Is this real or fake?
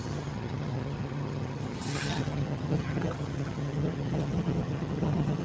fake